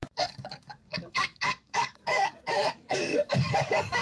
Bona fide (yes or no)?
no